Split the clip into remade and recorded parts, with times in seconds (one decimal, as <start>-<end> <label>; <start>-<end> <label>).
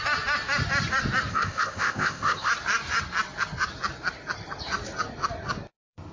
0.0-1.3 recorded; 1.3-2.5 remade; 2.5-6.1 recorded